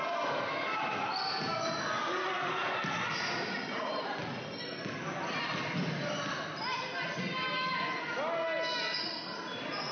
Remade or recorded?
recorded